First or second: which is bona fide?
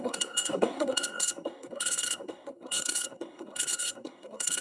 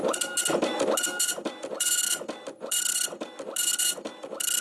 second